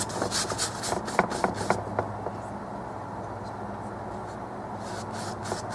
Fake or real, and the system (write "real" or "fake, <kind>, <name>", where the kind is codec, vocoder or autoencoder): real